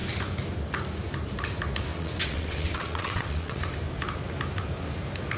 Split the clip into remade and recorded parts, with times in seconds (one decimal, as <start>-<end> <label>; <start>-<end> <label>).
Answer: 0.0-1.9 recorded; 1.9-3.6 remade; 3.6-5.4 recorded